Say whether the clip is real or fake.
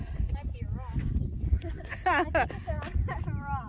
real